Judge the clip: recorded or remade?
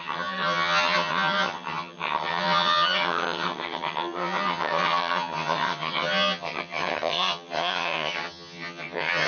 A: remade